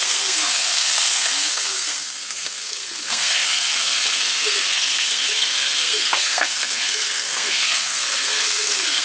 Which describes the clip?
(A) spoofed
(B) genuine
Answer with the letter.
A